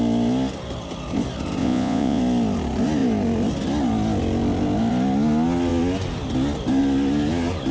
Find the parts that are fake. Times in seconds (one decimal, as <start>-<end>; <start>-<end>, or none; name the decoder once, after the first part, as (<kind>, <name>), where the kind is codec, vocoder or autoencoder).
1.6-2.2 (vocoder, Vocos)